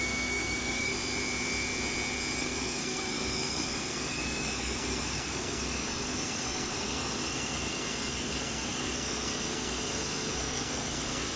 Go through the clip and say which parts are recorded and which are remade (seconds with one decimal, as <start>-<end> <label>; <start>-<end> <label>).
0.0-0.9 remade; 0.9-2.4 recorded; 2.4-11.4 remade